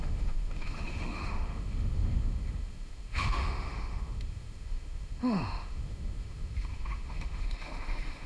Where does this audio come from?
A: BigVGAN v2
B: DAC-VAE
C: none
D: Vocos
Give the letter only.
B